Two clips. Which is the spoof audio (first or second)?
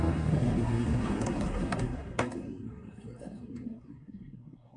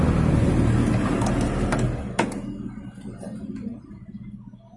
first